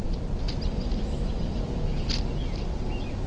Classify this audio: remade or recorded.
recorded